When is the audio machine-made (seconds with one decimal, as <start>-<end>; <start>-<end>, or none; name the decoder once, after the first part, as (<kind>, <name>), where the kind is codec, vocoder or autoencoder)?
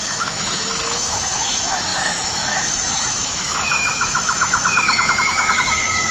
0.0-6.1 (autoencoder, DAC-VAE)